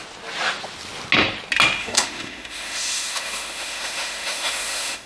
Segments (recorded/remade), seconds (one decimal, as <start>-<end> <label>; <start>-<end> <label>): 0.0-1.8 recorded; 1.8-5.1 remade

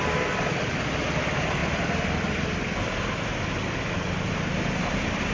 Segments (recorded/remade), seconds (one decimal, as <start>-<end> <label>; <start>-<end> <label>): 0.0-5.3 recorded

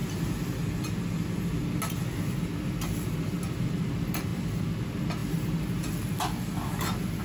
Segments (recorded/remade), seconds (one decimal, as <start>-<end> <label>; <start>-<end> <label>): 0.0-7.2 recorded

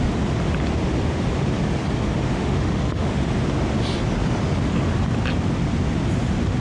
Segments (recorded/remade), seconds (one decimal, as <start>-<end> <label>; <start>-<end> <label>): 0.0-2.3 recorded; 2.3-3.3 remade; 3.3-6.6 recorded